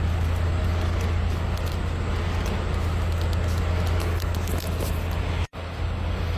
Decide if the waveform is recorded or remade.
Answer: recorded